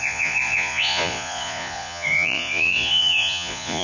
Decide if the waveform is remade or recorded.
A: remade